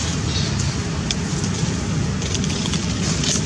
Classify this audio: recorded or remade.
recorded